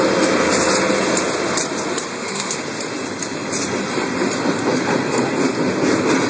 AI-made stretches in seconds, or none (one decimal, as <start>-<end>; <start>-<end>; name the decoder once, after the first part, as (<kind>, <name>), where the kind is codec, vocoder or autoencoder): 2.1-2.6 (autoencoder, DAC-VAE)